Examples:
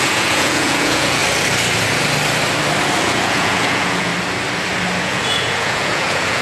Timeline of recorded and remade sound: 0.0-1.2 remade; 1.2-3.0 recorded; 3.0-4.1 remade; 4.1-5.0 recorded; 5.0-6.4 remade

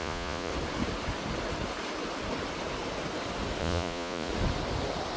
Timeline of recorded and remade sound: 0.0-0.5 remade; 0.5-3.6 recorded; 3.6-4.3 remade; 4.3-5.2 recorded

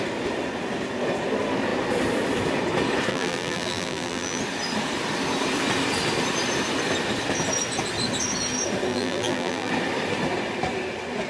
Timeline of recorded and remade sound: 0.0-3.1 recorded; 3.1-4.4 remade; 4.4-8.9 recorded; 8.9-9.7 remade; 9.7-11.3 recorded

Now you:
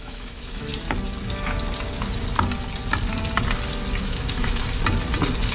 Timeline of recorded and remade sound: 0.0-0.7 remade; 0.7-4.0 recorded; 4.0-4.6 remade; 4.6-5.5 recorded